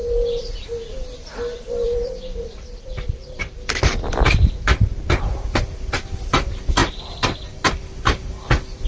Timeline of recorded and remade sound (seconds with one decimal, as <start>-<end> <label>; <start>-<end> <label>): 0.0-8.9 remade